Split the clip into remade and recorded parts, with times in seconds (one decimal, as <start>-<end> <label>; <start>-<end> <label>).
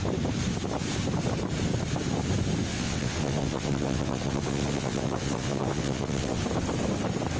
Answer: 0.0-2.7 recorded; 2.7-6.4 remade; 6.4-7.4 recorded